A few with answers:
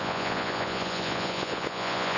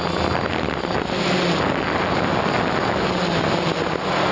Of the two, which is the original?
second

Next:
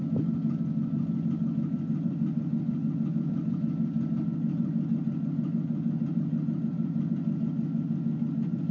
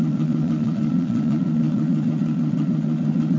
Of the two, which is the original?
first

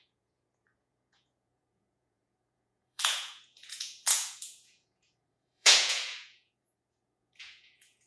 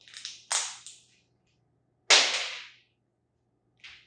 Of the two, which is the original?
second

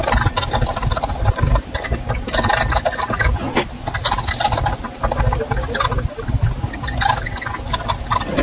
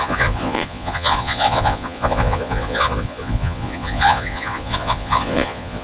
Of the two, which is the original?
first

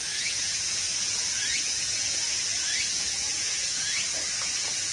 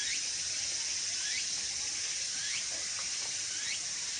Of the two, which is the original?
second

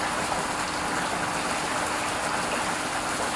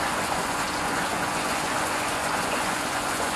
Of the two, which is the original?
first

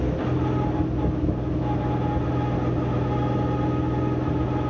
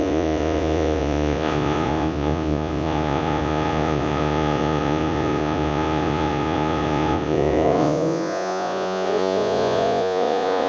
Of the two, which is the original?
first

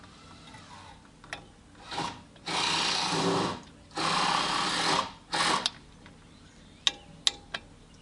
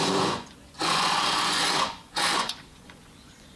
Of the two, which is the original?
first